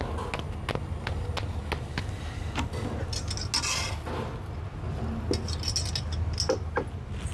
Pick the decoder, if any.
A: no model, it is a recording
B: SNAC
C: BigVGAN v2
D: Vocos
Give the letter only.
A